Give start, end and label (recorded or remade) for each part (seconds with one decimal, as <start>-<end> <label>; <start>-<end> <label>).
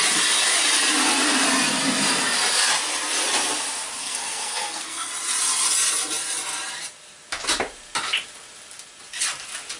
0.0-4.0 recorded; 4.0-5.1 remade; 5.1-9.8 recorded